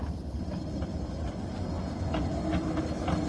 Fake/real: real